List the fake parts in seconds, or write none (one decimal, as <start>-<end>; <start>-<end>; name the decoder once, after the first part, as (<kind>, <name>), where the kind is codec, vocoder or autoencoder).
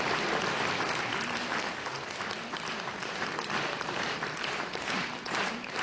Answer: 0.0-1.4 (vocoder, BigVGAN v2); 2.2-5.8